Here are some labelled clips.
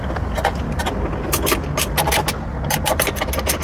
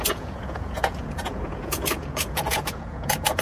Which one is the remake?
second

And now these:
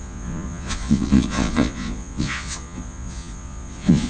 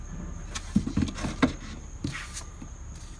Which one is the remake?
first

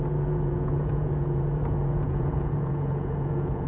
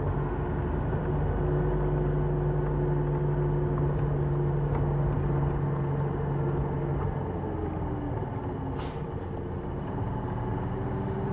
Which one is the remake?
first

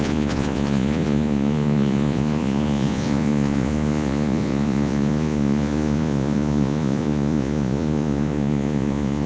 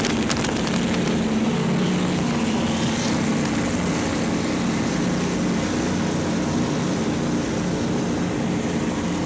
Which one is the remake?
first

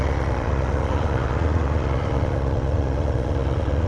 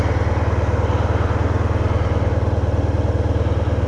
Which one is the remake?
first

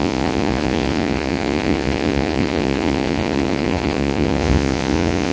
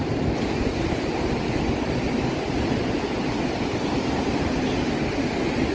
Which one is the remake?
first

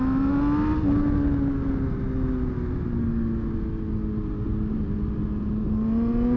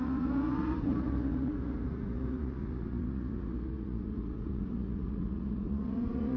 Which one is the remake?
second